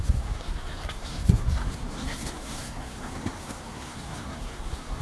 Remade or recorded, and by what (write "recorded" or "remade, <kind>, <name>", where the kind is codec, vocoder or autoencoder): remade, codec, SNAC